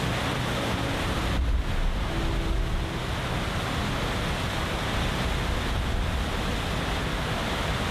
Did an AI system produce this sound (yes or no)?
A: no